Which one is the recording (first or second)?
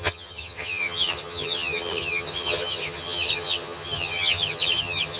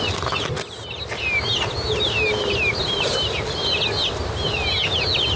second